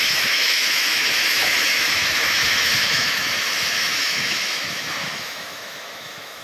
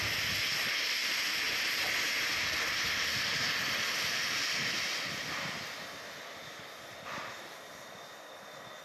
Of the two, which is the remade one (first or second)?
first